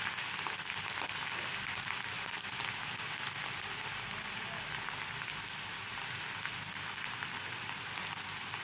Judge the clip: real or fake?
real